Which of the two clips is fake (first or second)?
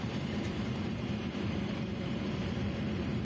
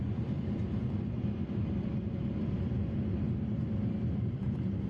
first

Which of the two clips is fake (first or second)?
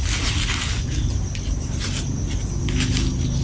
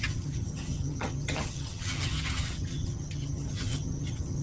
second